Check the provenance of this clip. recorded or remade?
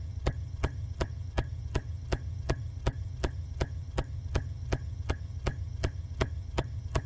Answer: remade